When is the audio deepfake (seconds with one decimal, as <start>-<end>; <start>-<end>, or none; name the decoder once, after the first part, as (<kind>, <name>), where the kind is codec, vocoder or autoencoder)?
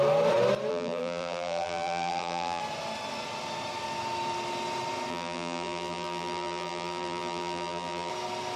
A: 0.7-2.6 (vocoder, BigVGAN v2); 5.1-8.1